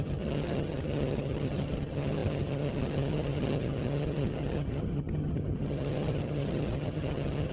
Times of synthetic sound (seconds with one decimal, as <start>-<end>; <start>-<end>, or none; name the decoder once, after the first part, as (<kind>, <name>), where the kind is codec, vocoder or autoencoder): 0.0-7.5 (vocoder, HiFi-GAN)